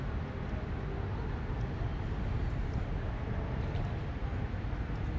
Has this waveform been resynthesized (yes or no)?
no